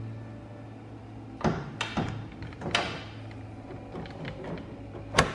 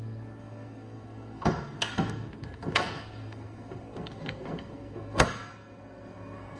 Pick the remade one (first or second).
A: second